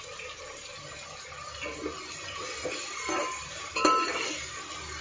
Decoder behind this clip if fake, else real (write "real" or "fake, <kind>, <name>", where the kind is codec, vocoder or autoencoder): real